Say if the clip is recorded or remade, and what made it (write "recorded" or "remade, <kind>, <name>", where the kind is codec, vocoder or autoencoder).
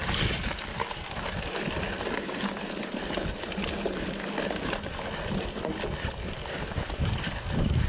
recorded